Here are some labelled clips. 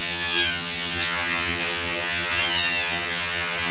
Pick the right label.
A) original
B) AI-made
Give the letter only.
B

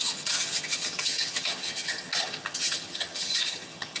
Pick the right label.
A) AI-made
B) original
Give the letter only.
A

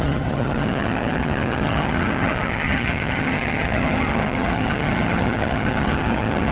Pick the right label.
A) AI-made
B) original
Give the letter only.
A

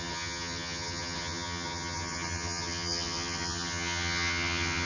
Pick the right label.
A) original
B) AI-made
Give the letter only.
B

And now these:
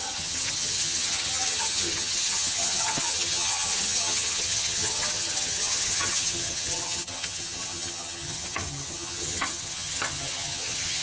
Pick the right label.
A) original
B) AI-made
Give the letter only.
B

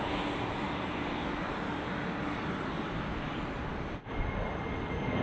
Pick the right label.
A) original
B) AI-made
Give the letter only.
A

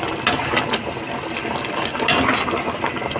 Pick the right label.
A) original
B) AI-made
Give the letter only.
A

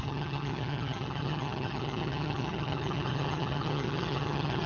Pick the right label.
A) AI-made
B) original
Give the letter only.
A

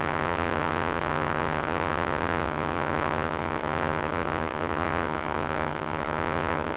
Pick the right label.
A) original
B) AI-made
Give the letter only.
B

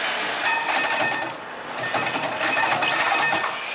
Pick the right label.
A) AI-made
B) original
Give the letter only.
B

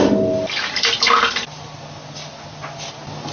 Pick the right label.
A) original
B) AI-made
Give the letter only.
A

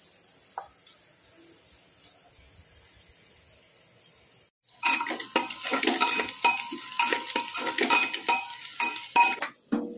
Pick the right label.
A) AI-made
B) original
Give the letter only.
B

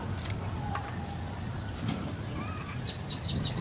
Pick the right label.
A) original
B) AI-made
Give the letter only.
A